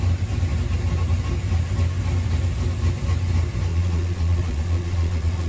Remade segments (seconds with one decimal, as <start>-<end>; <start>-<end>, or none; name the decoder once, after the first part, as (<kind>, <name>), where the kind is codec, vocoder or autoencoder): 3.7-5.5 (vocoder, Vocos)